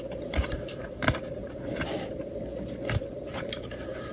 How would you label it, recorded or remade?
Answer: remade